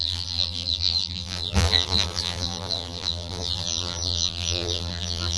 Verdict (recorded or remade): remade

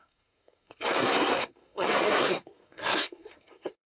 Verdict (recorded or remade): remade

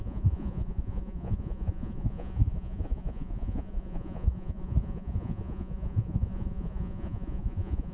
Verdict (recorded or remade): remade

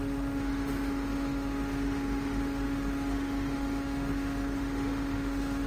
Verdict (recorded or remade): remade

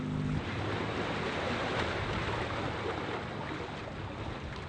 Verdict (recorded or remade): recorded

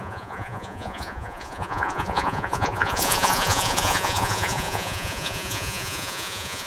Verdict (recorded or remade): remade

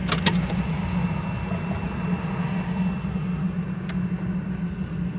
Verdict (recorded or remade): recorded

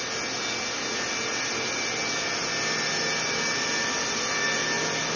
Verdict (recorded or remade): recorded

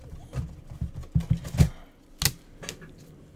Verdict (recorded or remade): recorded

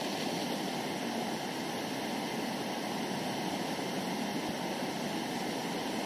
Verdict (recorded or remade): recorded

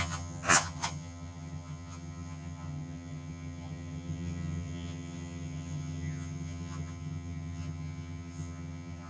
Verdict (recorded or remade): remade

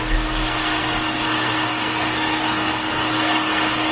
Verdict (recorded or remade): remade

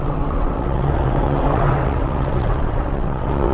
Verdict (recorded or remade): remade